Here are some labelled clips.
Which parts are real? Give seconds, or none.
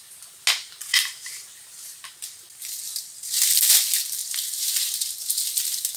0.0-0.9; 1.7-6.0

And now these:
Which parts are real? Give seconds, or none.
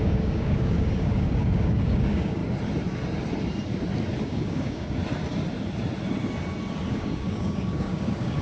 2.4-4.2; 5.0-6.9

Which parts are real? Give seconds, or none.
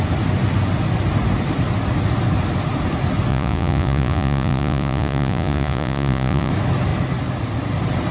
0.0-3.3; 6.5-8.1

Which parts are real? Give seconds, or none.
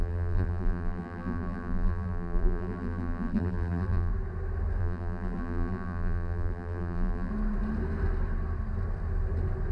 4.1-4.8; 7.3-9.7